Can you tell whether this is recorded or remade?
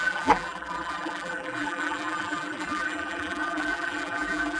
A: remade